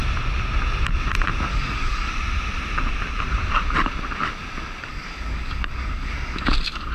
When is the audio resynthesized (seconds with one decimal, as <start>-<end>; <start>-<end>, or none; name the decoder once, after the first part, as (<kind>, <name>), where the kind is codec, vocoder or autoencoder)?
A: 1.5-2.1 (codec, DAC); 4.9-6.9